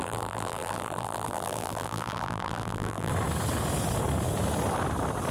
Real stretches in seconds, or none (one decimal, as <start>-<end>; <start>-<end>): 3.1-5.3